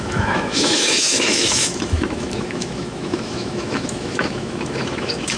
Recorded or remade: remade